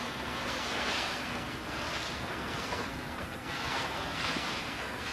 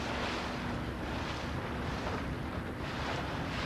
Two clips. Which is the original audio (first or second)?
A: second